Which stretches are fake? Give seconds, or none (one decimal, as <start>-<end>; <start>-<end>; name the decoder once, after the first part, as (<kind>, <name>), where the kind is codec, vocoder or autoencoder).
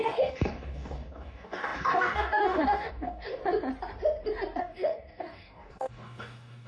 0.0-3.4 (codec, DAC); 4.6-6.7